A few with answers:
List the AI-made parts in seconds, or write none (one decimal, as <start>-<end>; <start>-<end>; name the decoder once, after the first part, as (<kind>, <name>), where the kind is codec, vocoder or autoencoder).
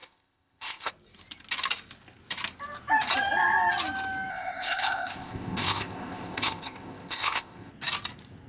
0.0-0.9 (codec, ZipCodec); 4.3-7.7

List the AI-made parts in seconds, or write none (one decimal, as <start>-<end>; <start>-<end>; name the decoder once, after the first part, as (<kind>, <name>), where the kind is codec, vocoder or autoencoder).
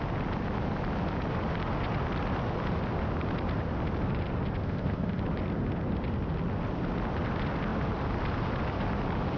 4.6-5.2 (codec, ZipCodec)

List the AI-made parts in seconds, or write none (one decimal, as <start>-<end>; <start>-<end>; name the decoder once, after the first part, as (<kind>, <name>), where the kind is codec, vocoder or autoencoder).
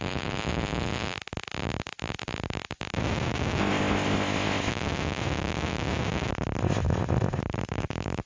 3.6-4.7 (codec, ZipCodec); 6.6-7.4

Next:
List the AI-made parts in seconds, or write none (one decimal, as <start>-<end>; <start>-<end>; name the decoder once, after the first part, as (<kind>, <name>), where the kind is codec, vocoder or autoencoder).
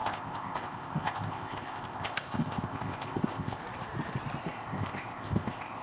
0.0-3.6 (codec, ZipCodec); 4.4-5.8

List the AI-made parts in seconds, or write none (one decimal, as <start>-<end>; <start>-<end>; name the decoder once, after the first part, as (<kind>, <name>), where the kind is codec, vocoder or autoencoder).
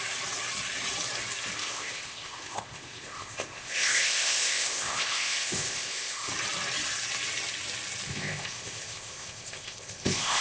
1.6-6.3 (codec, ZipCodec); 8.1-10.4